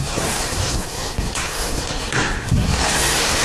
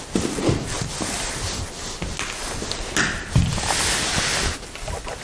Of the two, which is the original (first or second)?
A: second